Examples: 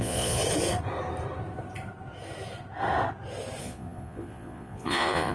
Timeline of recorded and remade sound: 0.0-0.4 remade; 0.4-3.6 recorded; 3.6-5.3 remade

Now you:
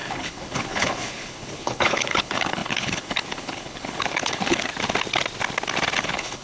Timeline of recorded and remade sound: 0.0-4.7 remade; 4.7-6.0 recorded; 6.0-6.4 remade

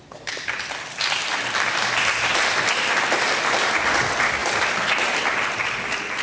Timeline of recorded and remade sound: 0.0-6.2 recorded

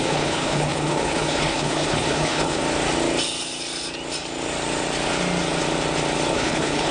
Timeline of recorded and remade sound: 0.0-2.6 remade; 2.6-6.3 recorded; 6.3-6.9 remade

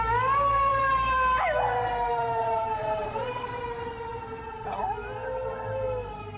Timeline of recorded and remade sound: 0.0-0.7 recorded; 0.7-3.6 remade; 3.6-4.1 recorded; 4.1-4.8 remade; 4.8-6.4 recorded

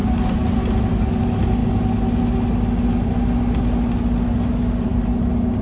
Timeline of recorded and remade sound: 0.0-5.6 recorded

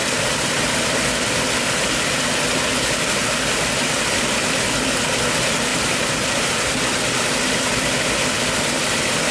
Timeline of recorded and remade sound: 0.0-5.7 recorded; 5.7-6.5 remade; 6.5-9.3 recorded